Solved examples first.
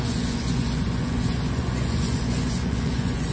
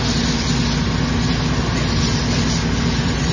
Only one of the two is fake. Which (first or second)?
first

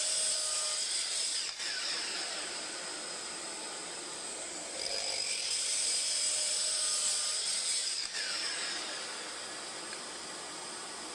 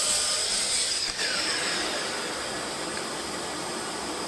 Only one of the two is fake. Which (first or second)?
second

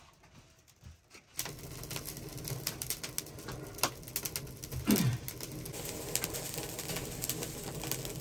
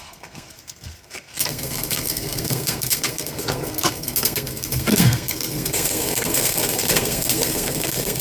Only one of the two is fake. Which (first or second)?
second